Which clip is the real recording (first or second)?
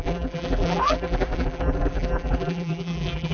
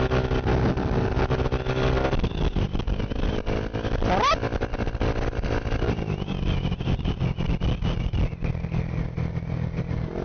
second